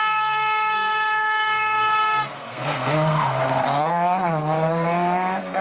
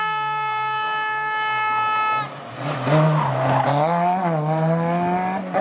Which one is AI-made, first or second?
first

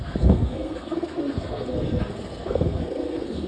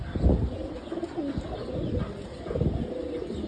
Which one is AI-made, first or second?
first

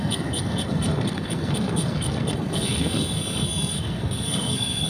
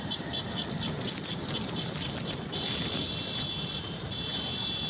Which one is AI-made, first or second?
first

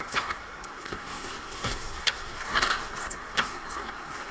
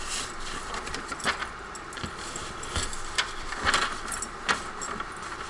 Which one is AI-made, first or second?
first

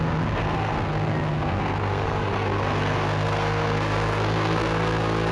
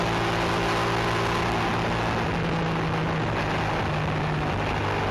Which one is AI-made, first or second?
first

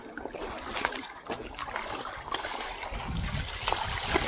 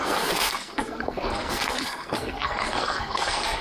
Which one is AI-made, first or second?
second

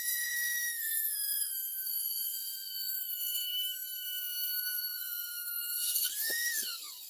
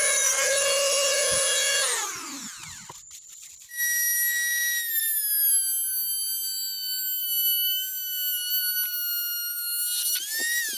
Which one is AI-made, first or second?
first